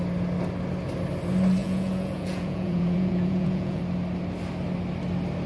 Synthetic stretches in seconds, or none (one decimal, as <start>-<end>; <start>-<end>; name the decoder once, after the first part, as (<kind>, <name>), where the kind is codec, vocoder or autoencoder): 1.6-3.8 (vocoder, Vocos)